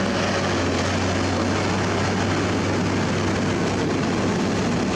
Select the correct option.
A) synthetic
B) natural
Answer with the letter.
B